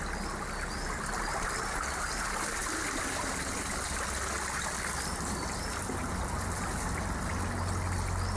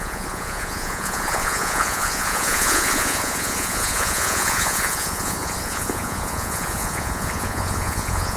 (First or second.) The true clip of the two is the first